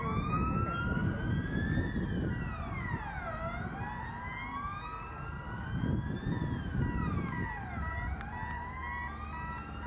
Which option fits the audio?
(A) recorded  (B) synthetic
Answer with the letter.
A